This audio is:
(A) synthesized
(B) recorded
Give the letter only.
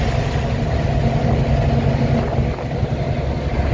B